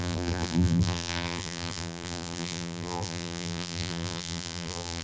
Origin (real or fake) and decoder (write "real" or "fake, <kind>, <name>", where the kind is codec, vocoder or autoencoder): fake, vocoder, BigVGAN v2